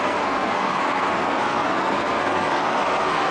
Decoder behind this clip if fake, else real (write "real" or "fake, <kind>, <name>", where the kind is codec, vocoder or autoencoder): fake, codec, SNAC